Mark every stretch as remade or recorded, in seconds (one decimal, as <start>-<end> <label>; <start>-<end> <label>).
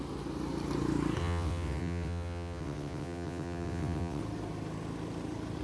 0.0-1.2 recorded; 1.2-4.2 remade; 4.2-5.6 recorded